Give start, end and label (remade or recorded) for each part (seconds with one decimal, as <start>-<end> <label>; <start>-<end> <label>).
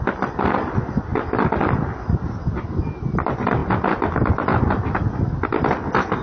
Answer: 0.0-6.2 recorded